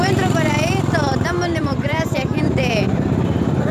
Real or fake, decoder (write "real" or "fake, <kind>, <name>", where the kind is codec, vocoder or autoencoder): fake, vocoder, BigVGAN v2